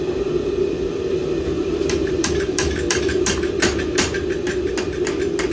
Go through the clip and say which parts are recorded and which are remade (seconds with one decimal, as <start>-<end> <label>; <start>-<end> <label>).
0.0-1.6 recorded; 1.6-4.2 remade; 4.2-5.5 recorded